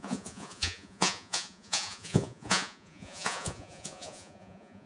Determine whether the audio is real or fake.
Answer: fake